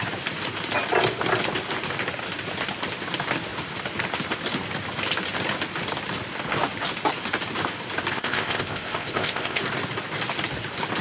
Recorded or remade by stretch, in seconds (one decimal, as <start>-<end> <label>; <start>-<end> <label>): 0.0-8.1 recorded; 8.1-9.6 remade; 9.6-11.0 recorded